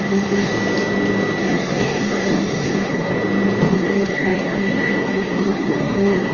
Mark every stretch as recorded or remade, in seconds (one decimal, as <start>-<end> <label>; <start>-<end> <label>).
0.0-0.5 remade; 0.5-1.4 recorded; 1.4-3.1 remade; 3.1-3.7 recorded; 3.7-6.3 remade